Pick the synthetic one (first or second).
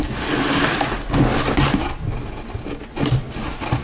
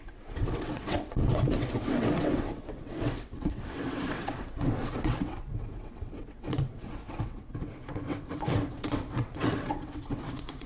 second